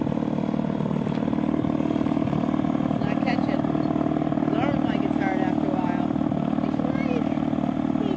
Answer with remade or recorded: recorded